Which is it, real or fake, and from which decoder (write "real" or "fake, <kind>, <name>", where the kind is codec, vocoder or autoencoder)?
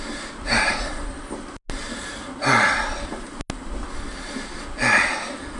real